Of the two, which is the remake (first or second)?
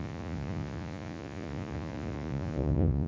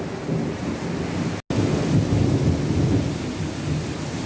first